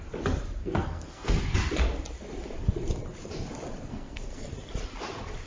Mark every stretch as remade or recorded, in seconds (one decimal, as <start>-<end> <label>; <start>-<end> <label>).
0.0-0.6 recorded; 0.6-1.4 remade; 1.4-3.9 recorded; 3.9-4.5 remade; 4.5-5.5 recorded